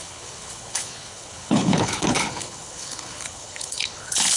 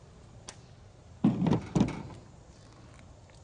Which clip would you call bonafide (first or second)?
second